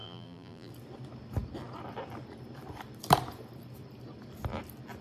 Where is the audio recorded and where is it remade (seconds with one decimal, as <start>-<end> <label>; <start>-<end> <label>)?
0.0-0.7 remade; 0.7-5.0 recorded